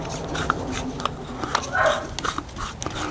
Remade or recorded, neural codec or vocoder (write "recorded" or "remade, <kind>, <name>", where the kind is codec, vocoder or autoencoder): recorded